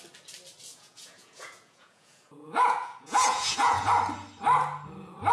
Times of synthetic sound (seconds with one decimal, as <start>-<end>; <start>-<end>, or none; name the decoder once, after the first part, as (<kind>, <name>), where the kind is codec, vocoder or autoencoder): 0.7-3.9 (vocoder, Vocos)